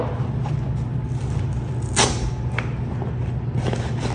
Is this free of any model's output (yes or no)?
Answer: yes